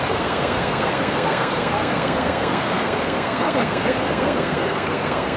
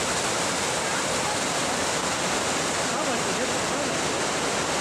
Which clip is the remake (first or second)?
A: first